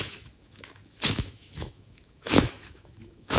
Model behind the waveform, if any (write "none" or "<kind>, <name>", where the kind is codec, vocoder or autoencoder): autoencoder, DAC-VAE